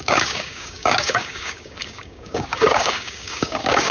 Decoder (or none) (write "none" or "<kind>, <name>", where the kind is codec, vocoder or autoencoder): codec, DAC